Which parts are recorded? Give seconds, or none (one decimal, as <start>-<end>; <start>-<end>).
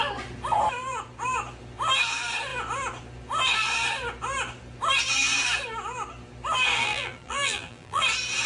0.0-6.8; 8.0-8.5